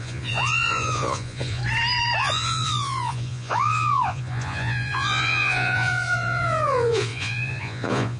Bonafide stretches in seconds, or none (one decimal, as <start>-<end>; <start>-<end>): 1.6-2.2